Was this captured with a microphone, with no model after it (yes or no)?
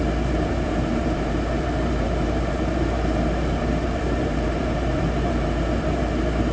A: no